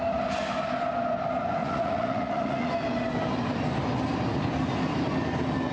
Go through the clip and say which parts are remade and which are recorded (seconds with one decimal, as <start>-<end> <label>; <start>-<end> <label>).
0.0-1.6 recorded; 1.6-2.7 remade; 2.7-5.7 recorded